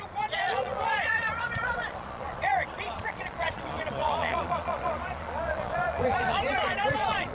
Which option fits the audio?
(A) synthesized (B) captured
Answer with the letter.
A